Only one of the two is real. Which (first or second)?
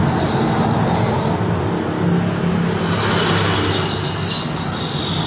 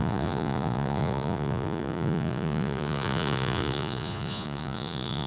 first